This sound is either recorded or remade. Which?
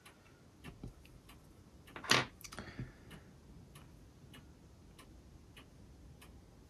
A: recorded